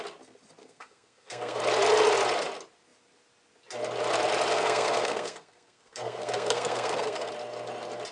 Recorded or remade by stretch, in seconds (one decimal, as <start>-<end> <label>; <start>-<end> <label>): 0.0-0.6 recorded; 0.6-1.6 remade; 1.6-4.5 recorded; 4.5-7.3 remade; 7.3-8.1 recorded